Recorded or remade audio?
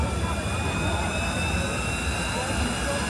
recorded